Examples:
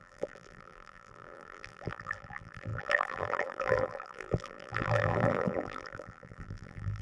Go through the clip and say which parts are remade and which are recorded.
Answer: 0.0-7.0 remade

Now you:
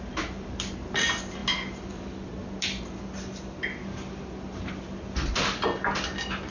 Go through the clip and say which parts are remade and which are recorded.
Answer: 0.0-6.5 recorded

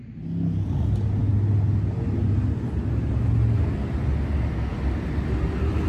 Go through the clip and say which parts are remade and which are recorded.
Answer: 0.0-5.9 recorded

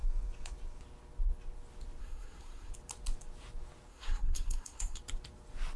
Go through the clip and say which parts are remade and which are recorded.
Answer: 0.0-2.0 recorded; 2.0-2.7 remade; 2.7-3.9 recorded; 3.9-5.0 remade; 5.0-5.8 recorded

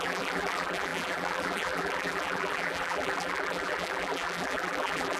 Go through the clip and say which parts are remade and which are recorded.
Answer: 0.0-5.2 remade

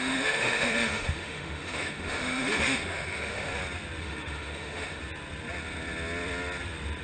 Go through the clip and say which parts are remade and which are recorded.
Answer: 0.0-3.5 remade; 3.5-4.0 recorded; 4.0-5.0 remade; 5.0-7.0 recorded

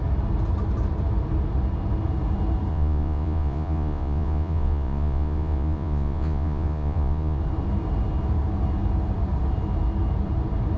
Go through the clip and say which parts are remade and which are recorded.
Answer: 0.0-2.7 recorded; 2.7-7.4 remade; 7.4-10.8 recorded